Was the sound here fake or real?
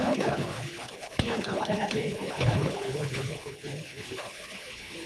fake